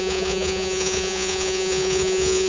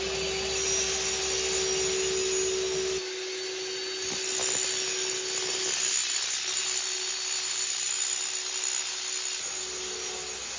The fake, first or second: first